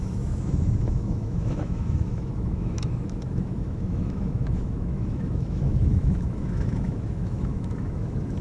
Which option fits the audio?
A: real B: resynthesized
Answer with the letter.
B